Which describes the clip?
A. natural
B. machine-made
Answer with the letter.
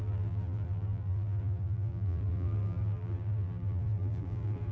B